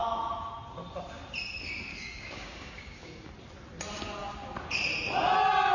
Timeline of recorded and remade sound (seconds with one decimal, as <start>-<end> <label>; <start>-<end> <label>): 0.0-1.9 recorded; 1.9-3.3 remade; 3.3-5.7 recorded